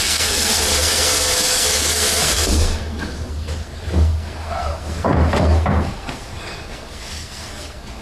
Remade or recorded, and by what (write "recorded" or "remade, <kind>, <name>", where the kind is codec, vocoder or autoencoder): remade, codec, SNAC